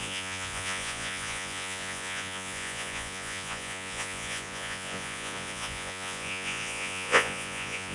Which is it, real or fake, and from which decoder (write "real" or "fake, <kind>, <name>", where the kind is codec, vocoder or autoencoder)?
fake, vocoder, Vocos